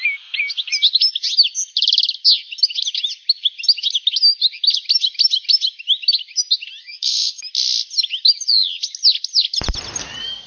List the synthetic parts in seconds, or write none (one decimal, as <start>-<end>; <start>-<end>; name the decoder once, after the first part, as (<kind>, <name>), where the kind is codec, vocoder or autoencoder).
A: 6.8-7.4 (codec, SNAC)